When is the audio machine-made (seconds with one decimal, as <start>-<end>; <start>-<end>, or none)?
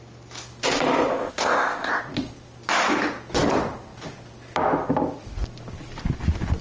1.1-2.0